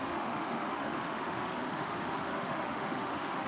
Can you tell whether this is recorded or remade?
remade